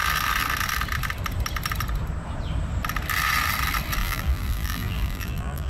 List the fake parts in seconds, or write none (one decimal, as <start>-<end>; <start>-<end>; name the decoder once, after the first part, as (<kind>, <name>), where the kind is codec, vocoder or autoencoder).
4.0-5.7 (vocoder, BigVGAN v2)